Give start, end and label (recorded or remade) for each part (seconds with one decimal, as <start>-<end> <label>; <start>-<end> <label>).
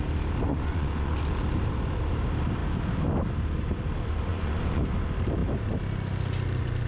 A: 0.0-0.5 recorded; 0.5-1.2 remade; 1.2-4.3 recorded; 4.3-4.8 remade; 4.8-6.9 recorded